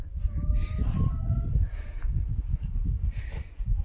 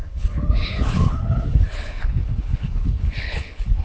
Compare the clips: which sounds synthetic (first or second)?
second